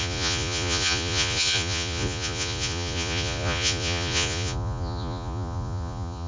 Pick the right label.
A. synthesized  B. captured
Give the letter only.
A